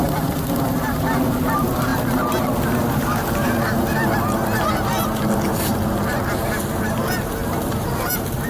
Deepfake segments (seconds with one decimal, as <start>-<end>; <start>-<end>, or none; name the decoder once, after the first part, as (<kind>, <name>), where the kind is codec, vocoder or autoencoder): 7.4-8.5 (vocoder, BigVGAN v2)